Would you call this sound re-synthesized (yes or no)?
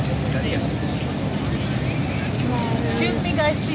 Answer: no